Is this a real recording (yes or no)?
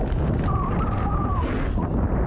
yes